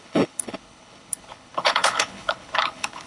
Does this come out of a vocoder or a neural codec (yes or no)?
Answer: yes